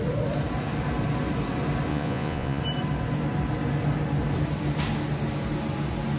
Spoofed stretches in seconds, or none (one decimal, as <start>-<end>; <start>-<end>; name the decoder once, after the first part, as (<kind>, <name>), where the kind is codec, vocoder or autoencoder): 1.9-2.6 (vocoder, Vocos)

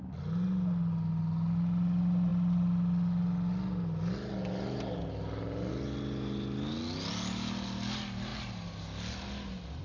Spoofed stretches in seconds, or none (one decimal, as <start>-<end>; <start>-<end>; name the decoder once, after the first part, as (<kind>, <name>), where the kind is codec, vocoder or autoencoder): none